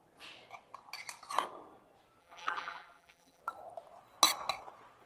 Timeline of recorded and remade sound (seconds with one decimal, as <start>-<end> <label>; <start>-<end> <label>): 0.0-2.2 recorded; 2.2-3.4 remade; 3.4-5.1 recorded